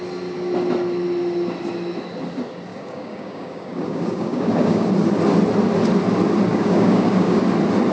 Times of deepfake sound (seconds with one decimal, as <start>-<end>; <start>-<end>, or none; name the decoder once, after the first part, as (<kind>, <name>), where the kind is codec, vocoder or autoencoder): 2.7-4.9 (codec, DAC); 6.5-7.4